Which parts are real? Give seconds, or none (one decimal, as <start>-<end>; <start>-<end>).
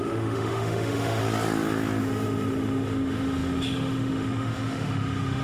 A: 1.2-2.0